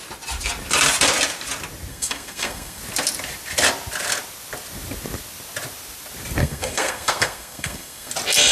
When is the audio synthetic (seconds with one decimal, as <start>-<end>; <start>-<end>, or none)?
1.9-2.8; 6.4-8.1